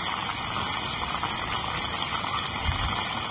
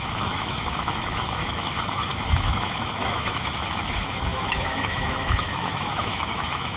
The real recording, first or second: first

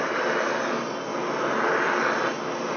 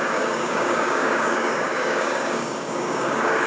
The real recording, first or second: first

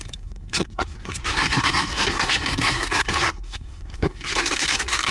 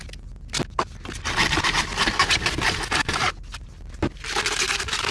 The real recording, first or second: second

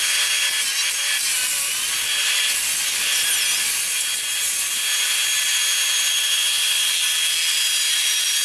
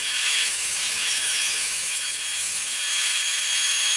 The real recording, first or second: first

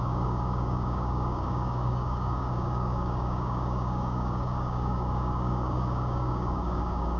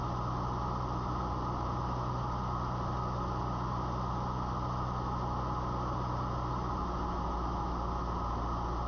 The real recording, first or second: second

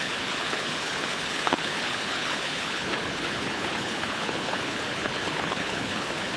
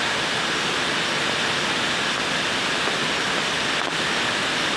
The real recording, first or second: second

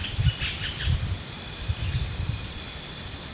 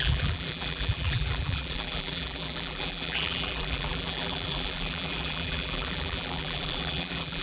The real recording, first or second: first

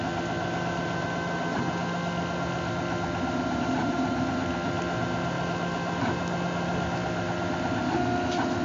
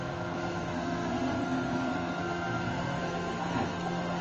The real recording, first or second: first